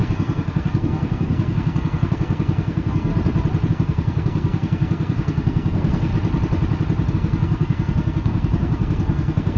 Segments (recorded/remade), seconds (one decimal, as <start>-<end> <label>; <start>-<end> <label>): 0.0-3.1 remade; 3.1-3.7 recorded; 3.7-6.1 remade; 6.1-7.1 recorded; 7.1-9.6 remade